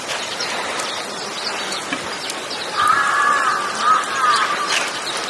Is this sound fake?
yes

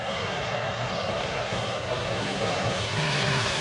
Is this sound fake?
yes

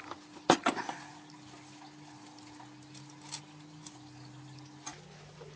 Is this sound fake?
no